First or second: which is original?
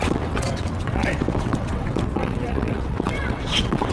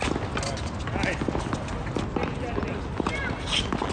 second